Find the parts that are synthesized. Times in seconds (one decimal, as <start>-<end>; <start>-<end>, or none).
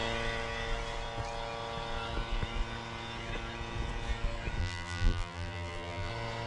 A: 4.6-6.1